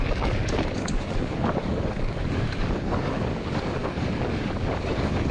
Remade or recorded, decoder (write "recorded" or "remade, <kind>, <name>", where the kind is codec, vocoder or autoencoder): remade, codec, DAC